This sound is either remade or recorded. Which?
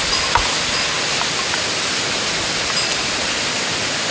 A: recorded